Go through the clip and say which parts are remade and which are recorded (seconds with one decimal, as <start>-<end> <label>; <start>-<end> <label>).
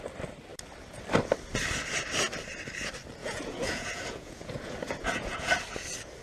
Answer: 0.0-3.2 recorded; 3.2-5.5 remade; 5.5-6.2 recorded